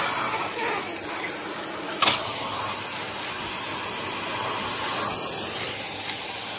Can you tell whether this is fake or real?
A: real